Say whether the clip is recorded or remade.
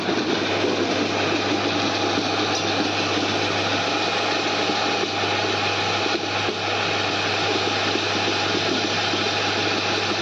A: recorded